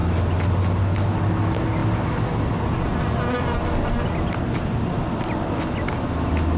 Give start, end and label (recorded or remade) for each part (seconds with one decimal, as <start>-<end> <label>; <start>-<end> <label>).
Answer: 0.0-6.6 recorded